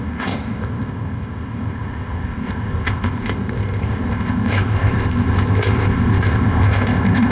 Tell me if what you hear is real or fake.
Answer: fake